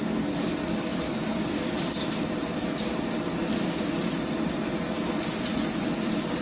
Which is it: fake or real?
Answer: real